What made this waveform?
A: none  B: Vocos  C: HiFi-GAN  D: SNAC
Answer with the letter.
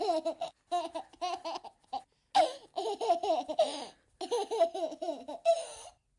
A